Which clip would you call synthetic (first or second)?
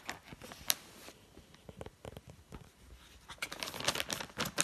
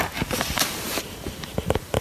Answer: second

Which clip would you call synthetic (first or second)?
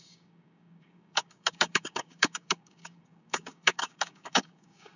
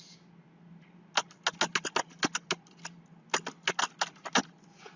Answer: first